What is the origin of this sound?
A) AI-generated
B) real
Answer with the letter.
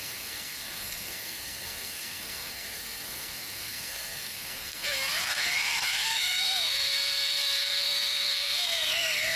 A